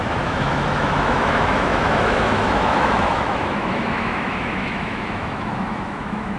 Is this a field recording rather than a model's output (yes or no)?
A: no